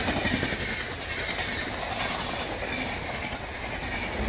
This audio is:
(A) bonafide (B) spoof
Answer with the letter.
A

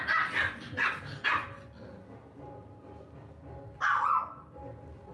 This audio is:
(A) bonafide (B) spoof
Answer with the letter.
A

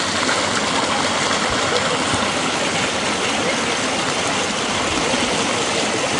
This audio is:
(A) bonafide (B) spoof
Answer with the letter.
A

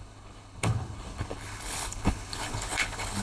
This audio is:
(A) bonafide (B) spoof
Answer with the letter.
B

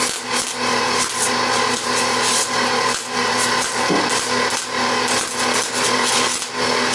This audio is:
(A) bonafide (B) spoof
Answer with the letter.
A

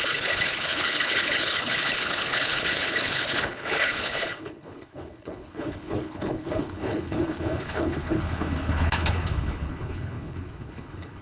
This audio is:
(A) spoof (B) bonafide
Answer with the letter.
A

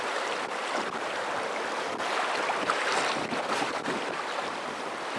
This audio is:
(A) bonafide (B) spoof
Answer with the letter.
A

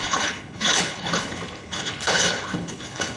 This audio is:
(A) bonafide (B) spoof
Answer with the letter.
B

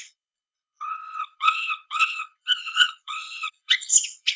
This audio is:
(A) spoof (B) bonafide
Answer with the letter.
A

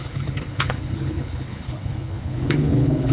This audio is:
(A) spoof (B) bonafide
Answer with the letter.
A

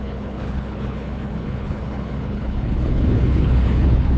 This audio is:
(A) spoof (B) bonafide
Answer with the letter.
A